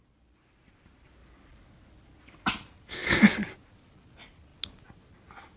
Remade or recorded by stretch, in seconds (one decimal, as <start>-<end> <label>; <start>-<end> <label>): 0.0-5.6 recorded